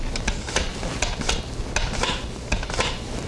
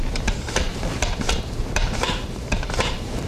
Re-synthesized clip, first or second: second